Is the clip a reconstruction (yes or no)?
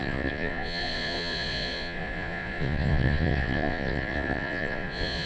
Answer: yes